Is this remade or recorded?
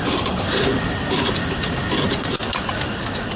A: recorded